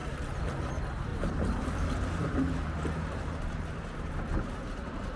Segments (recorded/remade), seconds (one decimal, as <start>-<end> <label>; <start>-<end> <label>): 0.0-0.7 remade; 0.7-1.1 recorded; 1.1-4.2 remade; 4.2-5.2 recorded